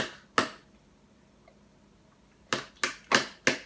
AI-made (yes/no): no